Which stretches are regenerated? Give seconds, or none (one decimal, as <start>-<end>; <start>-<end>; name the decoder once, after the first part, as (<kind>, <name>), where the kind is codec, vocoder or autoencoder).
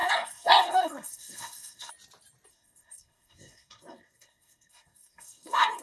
0.0-1.9 (codec, SNAC); 2.5-5.8